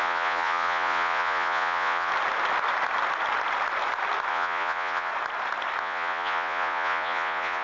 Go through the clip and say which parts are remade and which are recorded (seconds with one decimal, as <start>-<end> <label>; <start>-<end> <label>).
0.0-2.1 remade; 2.1-4.3 recorded; 4.3-5.1 remade; 5.1-5.8 recorded; 5.8-7.6 remade